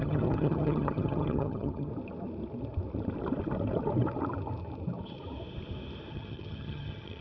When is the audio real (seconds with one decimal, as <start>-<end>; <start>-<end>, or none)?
1.9-6.1